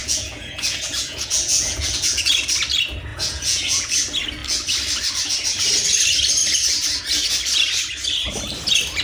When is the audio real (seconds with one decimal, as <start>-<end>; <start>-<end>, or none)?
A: 2.3-3.1; 3.9-9.0